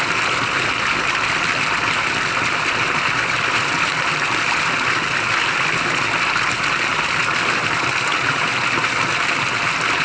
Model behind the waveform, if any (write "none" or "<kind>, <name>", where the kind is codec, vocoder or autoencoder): none